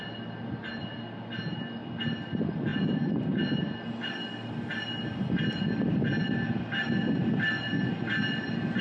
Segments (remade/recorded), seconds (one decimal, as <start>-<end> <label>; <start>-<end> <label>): 0.0-8.8 recorded